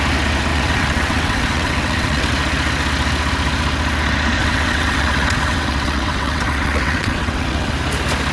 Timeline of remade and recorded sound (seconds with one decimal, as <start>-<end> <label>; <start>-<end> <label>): 0.0-0.5 recorded; 0.5-2.3 remade; 2.3-4.4 recorded; 4.4-7.7 remade; 7.7-8.3 recorded